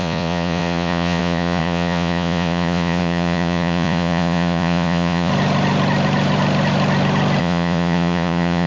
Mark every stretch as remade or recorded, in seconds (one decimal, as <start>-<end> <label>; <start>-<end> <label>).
0.0-5.3 remade; 5.3-7.4 recorded; 7.4-8.7 remade